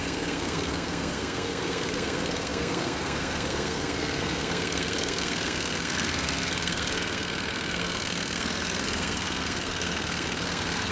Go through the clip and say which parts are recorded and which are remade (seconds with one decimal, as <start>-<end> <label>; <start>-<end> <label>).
0.0-10.9 remade